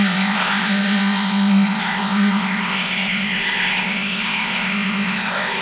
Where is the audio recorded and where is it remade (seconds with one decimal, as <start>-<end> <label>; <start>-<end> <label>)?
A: 0.0-5.6 remade